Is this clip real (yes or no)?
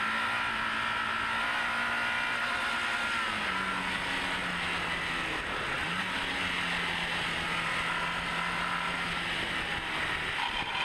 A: yes